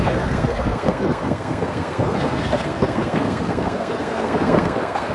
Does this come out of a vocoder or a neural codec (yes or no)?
yes